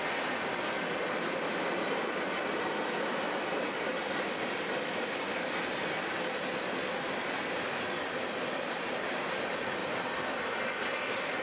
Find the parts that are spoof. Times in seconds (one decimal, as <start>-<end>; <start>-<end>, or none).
none